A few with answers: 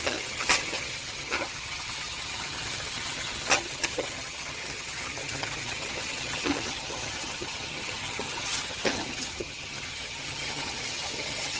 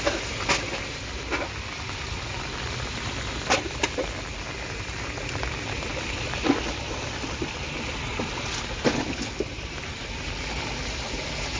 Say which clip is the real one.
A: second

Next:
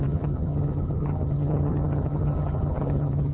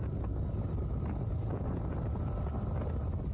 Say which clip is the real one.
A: second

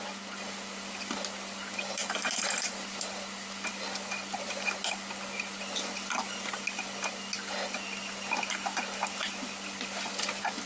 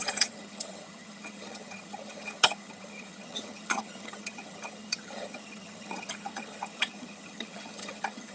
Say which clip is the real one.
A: first